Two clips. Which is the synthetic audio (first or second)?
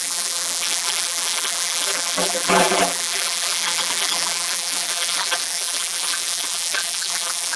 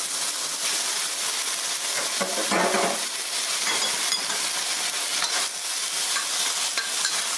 first